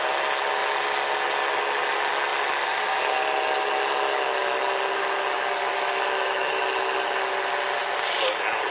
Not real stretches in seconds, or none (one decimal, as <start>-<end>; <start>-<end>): 5.7-6.6